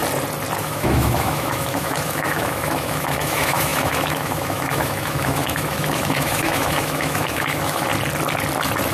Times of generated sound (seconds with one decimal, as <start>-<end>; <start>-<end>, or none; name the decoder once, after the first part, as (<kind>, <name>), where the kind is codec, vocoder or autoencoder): 0.6-7.9 (autoencoder, DAC-VAE)